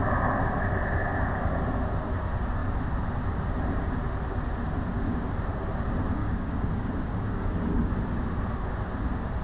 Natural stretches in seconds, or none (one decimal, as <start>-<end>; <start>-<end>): 0.0-6.2; 7.9-9.4